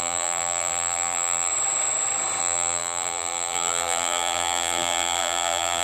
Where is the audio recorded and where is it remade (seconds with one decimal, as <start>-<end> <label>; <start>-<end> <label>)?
0.0-1.5 remade; 1.5-2.4 recorded; 2.4-5.8 remade